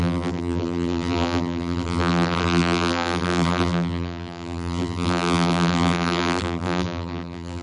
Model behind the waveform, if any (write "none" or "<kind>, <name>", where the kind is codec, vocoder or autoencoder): vocoder, BigVGAN v2